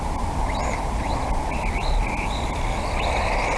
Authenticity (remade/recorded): recorded